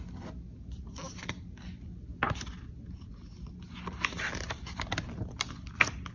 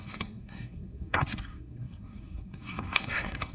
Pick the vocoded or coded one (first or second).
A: second